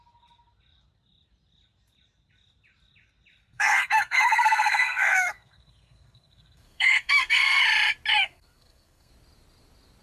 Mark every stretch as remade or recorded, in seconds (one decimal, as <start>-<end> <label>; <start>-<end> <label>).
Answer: 0.0-3.4 recorded; 3.4-7.6 remade; 7.6-8.2 recorded; 8.2-9.1 remade; 9.1-10.0 recorded